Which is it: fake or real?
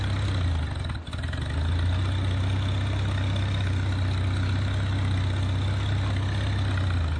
real